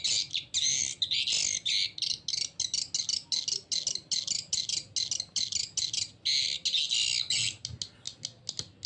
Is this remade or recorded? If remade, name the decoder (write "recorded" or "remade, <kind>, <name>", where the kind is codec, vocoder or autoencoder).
recorded